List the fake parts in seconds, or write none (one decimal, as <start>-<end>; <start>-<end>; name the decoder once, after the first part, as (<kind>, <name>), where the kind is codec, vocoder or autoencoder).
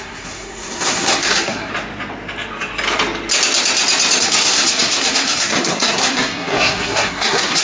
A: 0.0-1.7 (codec, SNAC); 4.2-7.6